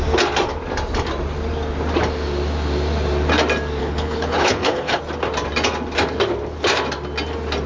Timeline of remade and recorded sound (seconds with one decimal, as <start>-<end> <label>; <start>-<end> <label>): 0.0-3.8 recorded; 3.8-5.0 remade; 5.0-7.7 recorded

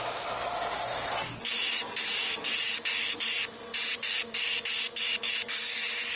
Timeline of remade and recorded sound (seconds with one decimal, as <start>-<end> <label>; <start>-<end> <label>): 0.0-6.2 recorded

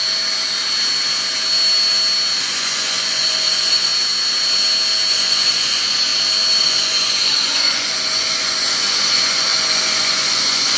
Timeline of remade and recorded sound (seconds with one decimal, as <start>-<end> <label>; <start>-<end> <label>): 0.0-2.4 recorded; 2.4-3.9 remade; 3.9-5.1 recorded; 5.1-6.1 remade; 6.1-6.6 recorded; 6.6-10.8 remade

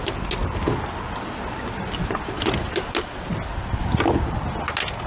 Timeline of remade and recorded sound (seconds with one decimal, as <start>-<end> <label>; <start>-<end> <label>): 0.0-5.1 recorded